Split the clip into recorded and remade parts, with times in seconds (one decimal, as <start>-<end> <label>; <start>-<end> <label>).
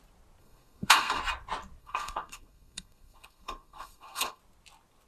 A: 0.0-0.4 recorded; 0.4-1.2 remade; 1.2-1.8 recorded; 1.8-4.4 remade; 4.4-5.1 recorded